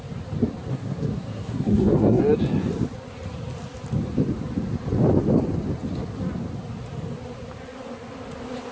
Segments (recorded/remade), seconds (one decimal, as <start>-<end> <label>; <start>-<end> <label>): 0.0-0.7 recorded; 0.7-2.2 remade; 2.2-8.7 recorded